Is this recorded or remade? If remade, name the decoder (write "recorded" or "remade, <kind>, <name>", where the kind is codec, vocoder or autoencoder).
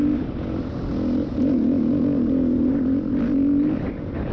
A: recorded